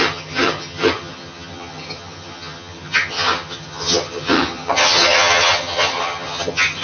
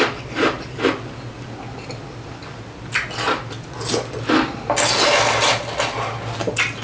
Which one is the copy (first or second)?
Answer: first